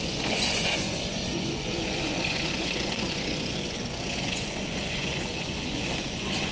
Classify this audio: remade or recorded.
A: remade